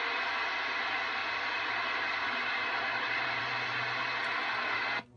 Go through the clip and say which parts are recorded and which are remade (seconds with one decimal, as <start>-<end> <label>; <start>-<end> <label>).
0.0-5.2 recorded

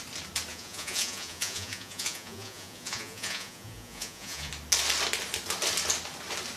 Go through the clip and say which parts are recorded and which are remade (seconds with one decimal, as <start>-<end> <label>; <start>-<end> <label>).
0.0-0.5 recorded; 0.5-4.5 remade; 4.5-6.6 recorded

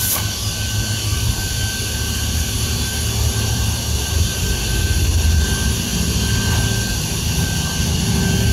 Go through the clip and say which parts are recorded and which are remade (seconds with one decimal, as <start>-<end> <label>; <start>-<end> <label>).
0.0-1.1 recorded; 1.1-5.1 remade; 5.1-6.9 recorded; 6.9-7.5 remade; 7.5-8.5 recorded

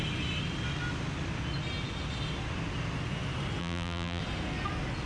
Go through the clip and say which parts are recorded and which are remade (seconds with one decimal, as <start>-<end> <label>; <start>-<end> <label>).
0.0-3.6 recorded; 3.6-4.2 remade; 4.2-5.1 recorded

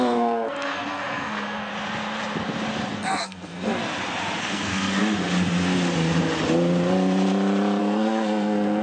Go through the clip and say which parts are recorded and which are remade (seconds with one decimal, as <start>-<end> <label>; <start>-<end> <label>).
0.0-1.7 remade; 1.7-2.9 recorded; 2.9-3.8 remade; 3.8-4.4 recorded; 4.4-5.0 remade; 5.0-7.8 recorded; 7.8-8.8 remade